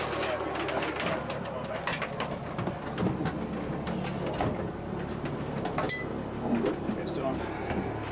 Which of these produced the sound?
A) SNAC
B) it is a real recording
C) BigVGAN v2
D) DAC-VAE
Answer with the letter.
B